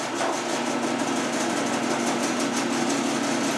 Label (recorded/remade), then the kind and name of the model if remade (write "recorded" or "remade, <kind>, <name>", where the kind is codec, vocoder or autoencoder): recorded